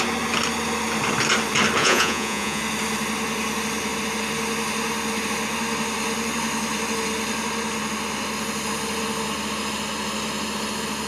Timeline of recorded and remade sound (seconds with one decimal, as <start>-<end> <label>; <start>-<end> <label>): 0.0-1.8 recorded; 1.8-2.6 remade; 2.6-11.1 recorded